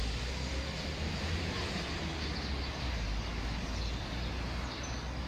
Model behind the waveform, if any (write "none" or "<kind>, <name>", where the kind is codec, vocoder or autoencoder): none